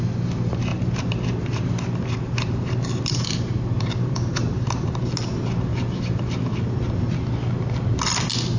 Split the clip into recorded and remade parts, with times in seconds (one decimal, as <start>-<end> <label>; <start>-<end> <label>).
0.0-0.7 recorded; 0.7-4.9 remade; 4.9-5.7 recorded; 5.7-6.5 remade; 6.5-8.6 recorded